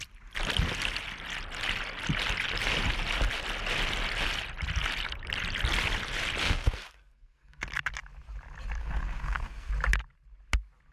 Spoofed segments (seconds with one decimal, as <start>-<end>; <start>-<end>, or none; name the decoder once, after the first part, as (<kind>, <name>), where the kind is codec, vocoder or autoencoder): 6.4-7.6 (codec, SNAC); 8.8-9.7